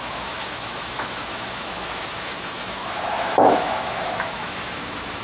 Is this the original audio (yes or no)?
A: no